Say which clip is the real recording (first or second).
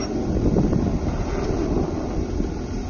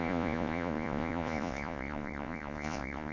first